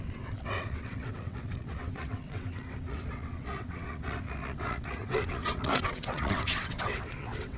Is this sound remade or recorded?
remade